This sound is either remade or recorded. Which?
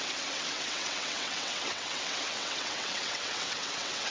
remade